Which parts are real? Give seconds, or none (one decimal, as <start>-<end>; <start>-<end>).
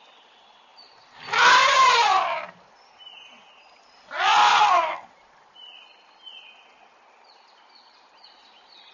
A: 0.0-4.5; 5.1-8.9